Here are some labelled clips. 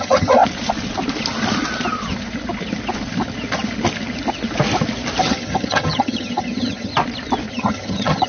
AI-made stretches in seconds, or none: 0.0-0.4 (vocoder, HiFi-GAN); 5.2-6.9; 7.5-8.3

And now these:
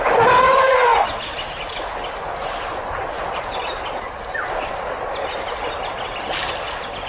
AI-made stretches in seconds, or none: none

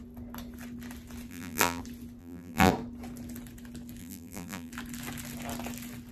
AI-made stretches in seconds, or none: 1.3-1.8 (vocoder, BigVGAN v2); 2.2-2.7; 4.0-4.7

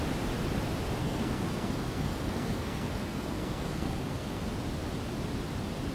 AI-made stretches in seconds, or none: 1.0-4.5 (codec, SNAC)